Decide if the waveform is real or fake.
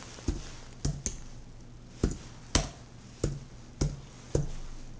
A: real